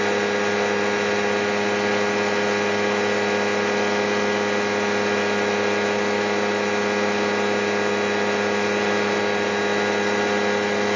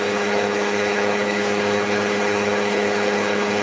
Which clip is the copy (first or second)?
second